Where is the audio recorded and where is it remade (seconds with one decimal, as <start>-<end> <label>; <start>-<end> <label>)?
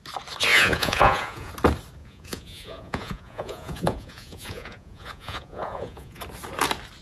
0.0-0.5 recorded; 0.5-1.5 remade; 1.5-2.0 recorded; 2.0-6.2 remade; 6.2-7.0 recorded